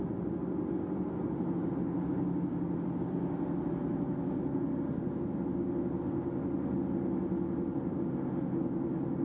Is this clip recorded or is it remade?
recorded